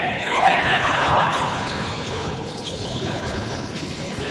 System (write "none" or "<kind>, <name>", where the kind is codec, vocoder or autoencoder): codec, HILCodec